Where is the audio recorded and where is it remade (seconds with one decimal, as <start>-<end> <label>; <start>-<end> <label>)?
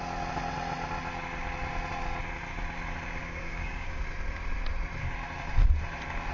0.0-3.2 recorded; 3.2-4.0 remade; 4.0-6.3 recorded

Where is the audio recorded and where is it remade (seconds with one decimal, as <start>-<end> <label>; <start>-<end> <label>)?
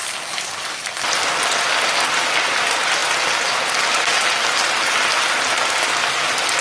0.0-6.6 recorded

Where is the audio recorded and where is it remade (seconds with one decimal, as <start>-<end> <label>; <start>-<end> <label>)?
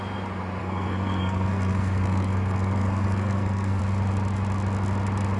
0.0-0.6 recorded; 0.6-3.8 remade; 3.8-5.4 recorded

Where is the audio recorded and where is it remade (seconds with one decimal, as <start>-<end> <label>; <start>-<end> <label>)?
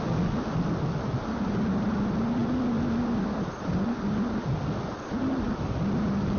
0.0-6.4 recorded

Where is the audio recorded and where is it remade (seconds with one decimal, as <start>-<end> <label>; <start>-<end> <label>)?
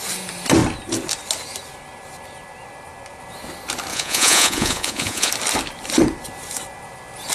0.0-3.9 recorded; 3.9-5.3 remade; 5.3-7.3 recorded